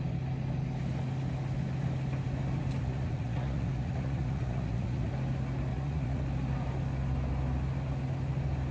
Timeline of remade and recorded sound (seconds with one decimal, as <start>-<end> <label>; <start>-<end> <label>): 0.0-2.8 recorded; 2.8-5.1 remade; 5.1-5.7 recorded; 5.7-6.2 remade; 6.2-8.7 recorded

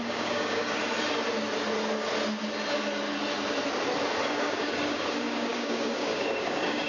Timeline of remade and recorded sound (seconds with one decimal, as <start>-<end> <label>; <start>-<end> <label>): 0.0-0.8 remade; 0.8-4.3 recorded; 4.3-6.9 remade

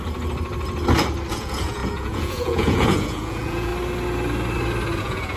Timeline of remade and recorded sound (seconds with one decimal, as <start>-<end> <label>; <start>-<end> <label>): 0.0-1.3 recorded; 1.3-3.7 remade; 3.7-5.0 recorded; 5.0-5.4 remade

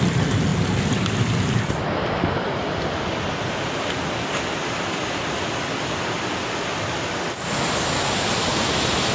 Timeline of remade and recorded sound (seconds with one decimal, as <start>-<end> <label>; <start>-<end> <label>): 0.0-9.1 recorded

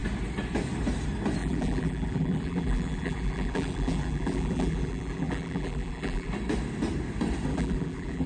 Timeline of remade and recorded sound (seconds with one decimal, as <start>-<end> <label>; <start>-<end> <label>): 0.0-1.4 recorded; 1.4-6.3 remade; 6.3-7.5 recorded; 7.5-8.3 remade